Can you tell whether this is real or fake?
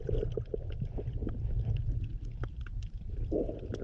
real